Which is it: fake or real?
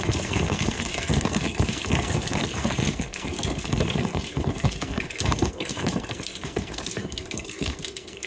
fake